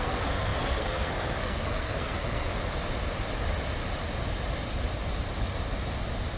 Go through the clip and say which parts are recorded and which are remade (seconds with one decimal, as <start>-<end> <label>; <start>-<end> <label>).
0.0-2.5 remade; 2.5-6.4 recorded